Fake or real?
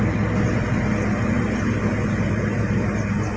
real